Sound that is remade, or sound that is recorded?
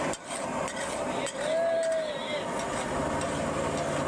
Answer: recorded